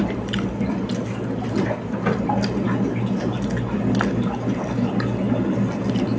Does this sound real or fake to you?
real